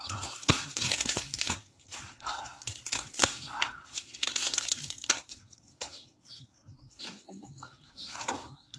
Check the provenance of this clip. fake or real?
fake